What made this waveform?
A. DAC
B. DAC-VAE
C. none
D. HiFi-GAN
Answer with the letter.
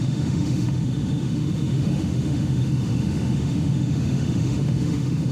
B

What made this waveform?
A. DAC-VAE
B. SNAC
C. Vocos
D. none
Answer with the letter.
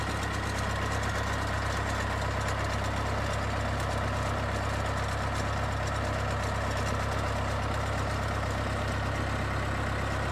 D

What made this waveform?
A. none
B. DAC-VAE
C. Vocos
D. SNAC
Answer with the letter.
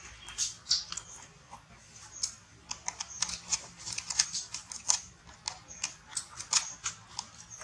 A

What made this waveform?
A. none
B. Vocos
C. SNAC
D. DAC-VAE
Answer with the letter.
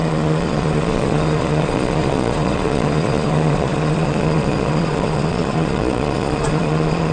B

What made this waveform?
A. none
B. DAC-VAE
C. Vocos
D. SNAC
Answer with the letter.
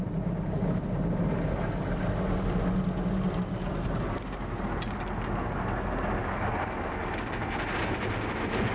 A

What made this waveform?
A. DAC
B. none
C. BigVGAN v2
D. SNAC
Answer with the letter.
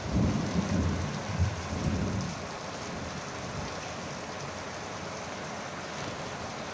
B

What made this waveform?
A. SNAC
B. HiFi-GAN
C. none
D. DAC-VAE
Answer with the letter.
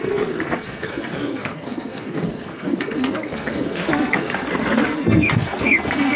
A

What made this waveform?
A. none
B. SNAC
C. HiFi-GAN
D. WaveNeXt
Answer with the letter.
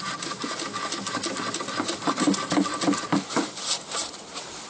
A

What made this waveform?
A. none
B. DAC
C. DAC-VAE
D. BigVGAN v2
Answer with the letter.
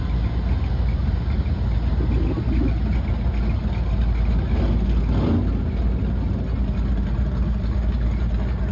A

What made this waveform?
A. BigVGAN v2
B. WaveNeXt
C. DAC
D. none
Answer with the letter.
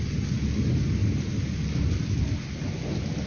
D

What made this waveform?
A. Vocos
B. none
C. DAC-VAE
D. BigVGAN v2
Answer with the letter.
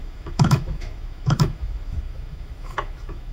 C